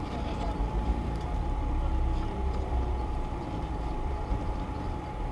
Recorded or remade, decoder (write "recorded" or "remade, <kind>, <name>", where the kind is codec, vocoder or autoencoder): remade, vocoder, BigVGAN v2